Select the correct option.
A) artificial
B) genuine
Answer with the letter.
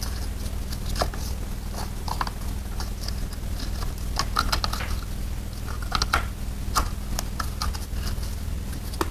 B